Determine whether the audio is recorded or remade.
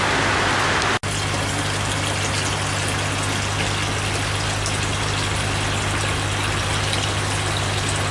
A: recorded